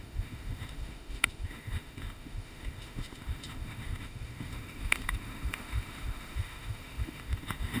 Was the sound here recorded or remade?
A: remade